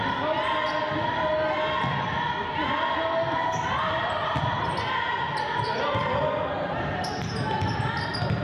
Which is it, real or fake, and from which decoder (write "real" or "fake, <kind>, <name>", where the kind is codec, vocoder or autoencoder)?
real